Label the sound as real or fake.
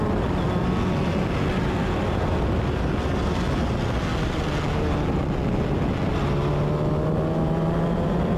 real